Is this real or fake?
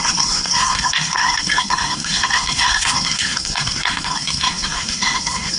fake